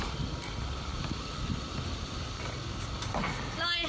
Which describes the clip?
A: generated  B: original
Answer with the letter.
B